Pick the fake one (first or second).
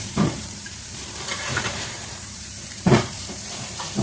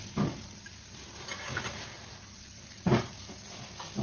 first